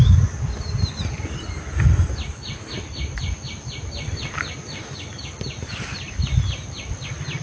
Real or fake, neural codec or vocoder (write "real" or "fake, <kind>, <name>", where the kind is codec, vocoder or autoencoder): real